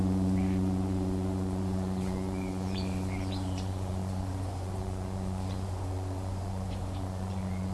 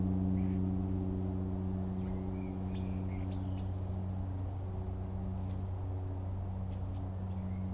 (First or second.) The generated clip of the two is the first